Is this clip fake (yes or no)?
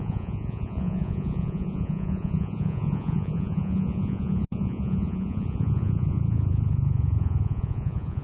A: yes